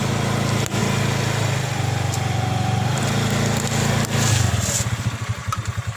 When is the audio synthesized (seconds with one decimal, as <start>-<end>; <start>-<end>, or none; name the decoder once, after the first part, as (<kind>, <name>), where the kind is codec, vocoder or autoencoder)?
5.4-6.0 (vocoder, BigVGAN v2)